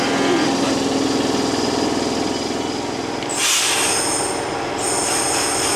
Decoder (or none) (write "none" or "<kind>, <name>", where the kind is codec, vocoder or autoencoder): none